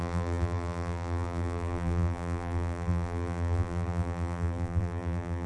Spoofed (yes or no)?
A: yes